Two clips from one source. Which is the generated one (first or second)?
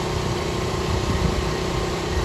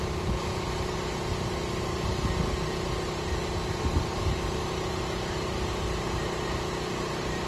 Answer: first